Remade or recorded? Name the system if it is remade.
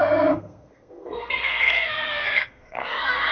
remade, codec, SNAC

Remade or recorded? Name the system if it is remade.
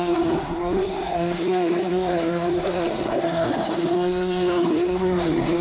remade, codec, SNAC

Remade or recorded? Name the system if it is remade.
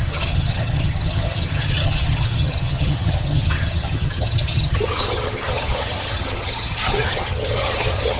remade, vocoder, HiFi-GAN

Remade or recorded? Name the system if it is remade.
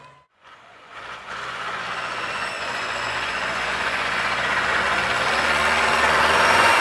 remade, vocoder, Vocos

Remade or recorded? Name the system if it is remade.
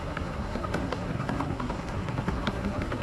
remade, codec, SNAC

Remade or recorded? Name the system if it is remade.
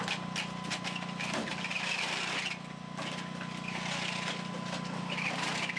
recorded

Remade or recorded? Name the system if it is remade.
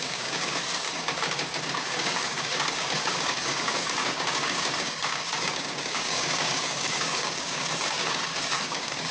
remade, codec, DAC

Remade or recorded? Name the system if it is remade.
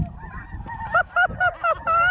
recorded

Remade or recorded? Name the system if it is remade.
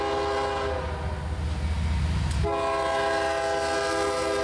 recorded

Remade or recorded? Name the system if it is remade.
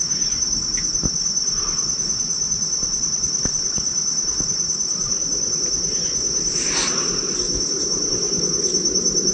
recorded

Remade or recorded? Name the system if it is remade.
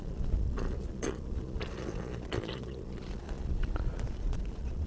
remade, vocoder, Vocos